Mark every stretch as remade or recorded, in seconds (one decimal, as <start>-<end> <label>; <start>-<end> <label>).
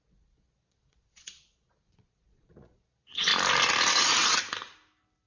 0.0-3.3 remade; 3.3-5.3 recorded